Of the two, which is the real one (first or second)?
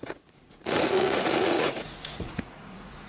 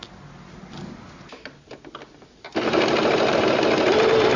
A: second